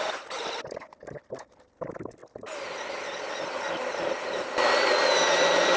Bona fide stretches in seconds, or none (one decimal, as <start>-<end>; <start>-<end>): 0.0-5.8